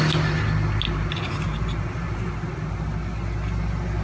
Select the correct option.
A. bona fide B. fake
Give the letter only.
A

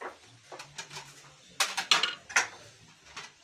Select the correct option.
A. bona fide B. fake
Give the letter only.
A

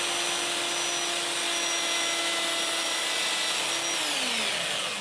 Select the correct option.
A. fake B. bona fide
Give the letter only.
B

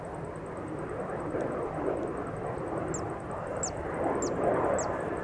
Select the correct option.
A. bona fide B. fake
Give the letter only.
A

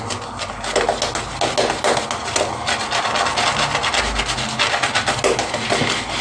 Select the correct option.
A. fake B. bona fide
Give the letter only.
B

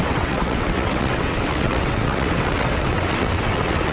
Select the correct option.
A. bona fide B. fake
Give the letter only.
B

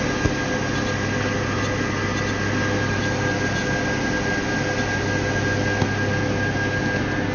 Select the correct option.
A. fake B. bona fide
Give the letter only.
B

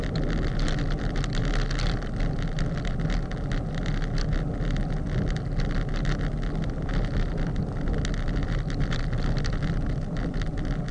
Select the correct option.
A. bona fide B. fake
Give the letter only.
A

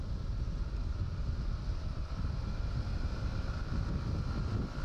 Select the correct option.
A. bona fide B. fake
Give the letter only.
A